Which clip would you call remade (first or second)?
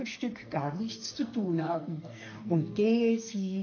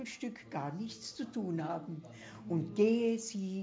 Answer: first